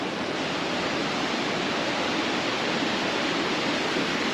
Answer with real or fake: real